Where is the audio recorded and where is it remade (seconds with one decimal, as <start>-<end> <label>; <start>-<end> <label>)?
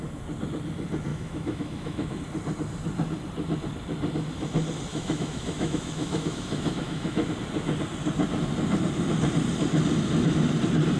0.0-1.1 recorded; 1.1-2.2 remade; 2.2-4.9 recorded; 4.9-7.3 remade; 7.3-11.0 recorded